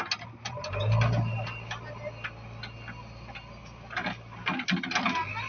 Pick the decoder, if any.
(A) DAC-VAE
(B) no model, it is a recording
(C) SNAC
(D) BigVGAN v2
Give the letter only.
B